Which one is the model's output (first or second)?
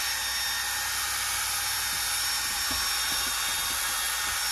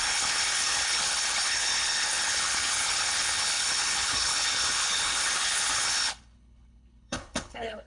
second